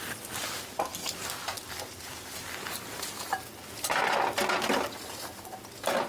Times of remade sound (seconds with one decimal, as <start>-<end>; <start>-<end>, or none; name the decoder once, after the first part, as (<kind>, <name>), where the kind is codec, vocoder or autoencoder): none

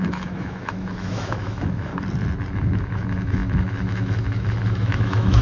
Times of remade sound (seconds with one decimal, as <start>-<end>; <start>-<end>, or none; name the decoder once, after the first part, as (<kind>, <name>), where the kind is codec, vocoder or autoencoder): 0.0-1.9 (autoencoder, DAC-VAE); 2.5-5.4

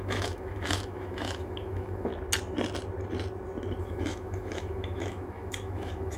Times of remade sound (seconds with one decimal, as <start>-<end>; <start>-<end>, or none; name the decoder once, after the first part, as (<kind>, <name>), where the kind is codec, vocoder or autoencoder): 0.0-2.1 (autoencoder, DAC-VAE); 3.8-6.2

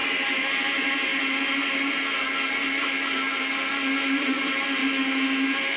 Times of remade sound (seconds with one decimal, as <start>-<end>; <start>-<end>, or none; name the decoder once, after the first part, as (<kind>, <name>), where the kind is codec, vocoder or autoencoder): none